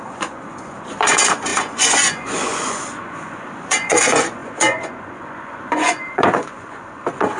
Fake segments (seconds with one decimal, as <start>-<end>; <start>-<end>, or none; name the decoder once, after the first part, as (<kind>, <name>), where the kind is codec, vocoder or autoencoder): 0.0-7.4 (vocoder, Vocos)